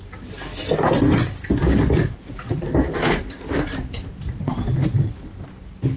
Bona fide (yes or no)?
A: yes